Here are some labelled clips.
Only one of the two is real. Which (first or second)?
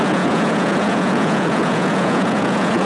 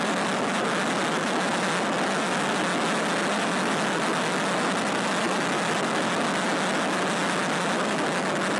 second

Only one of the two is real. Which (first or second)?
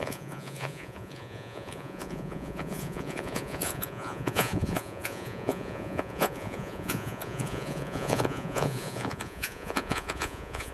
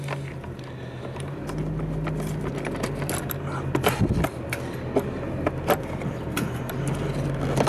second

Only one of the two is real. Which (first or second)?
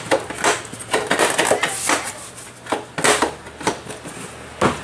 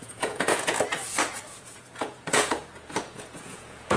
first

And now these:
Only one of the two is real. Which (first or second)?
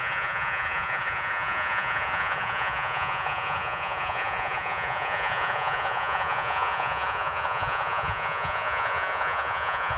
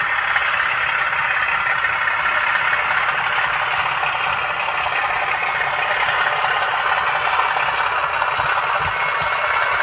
second